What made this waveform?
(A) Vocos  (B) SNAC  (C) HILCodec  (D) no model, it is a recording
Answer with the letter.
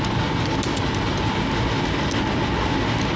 D